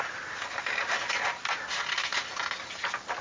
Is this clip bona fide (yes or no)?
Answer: yes